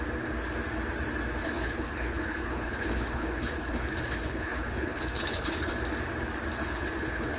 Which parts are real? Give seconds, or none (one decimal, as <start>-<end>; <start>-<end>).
0.0-1.4; 5.8-6.6